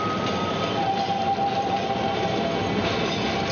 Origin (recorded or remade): recorded